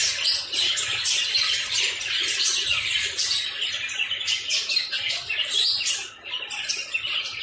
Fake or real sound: real